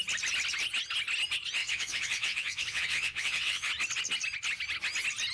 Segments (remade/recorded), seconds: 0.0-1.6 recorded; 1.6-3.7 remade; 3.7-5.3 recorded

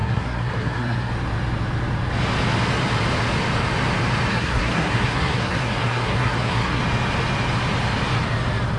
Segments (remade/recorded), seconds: 0.0-1.1 remade; 1.1-4.3 recorded; 4.3-6.8 remade; 6.8-8.8 recorded

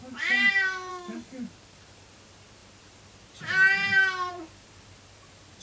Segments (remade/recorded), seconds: 0.0-0.9 recorded; 0.9-1.4 remade; 1.4-5.6 recorded

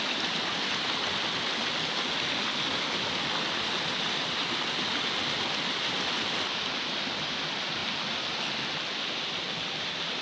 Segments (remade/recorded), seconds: 0.0-10.2 recorded

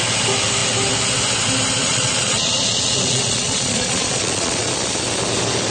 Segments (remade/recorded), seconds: 0.0-1.8 recorded; 1.8-4.7 remade; 4.7-5.7 recorded

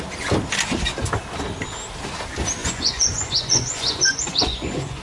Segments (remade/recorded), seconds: 0.0-2.6 recorded; 2.6-5.0 remade

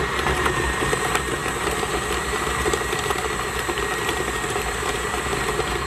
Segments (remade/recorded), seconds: 0.0-5.9 remade

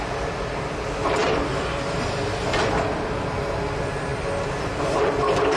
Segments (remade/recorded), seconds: 0.0-1.2 recorded; 1.2-3.1 remade; 3.1-5.6 recorded